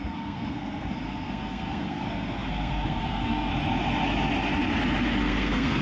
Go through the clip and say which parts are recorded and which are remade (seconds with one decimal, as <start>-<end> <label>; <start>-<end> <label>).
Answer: 0.0-3.5 remade; 3.5-5.2 recorded; 5.2-5.8 remade